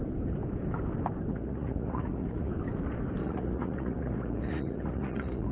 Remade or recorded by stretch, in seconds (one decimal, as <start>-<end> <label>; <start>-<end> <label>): 0.0-1.3 recorded; 1.3-2.5 remade; 2.5-3.2 recorded; 3.2-5.5 remade